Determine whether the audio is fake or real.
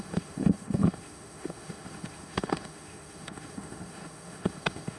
fake